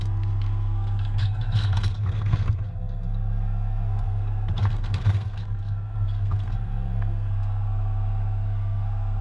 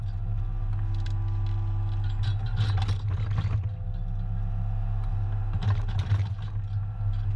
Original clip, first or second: second